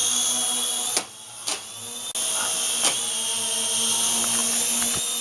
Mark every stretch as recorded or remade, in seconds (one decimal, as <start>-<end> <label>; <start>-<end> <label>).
0.0-5.2 recorded